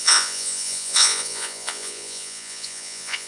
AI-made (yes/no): yes